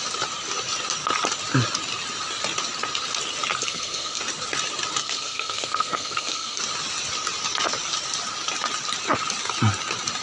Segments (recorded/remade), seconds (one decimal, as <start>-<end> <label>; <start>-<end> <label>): 0.0-3.6 recorded; 3.6-4.2 remade; 4.2-5.0 recorded; 5.0-6.6 remade; 6.6-10.2 recorded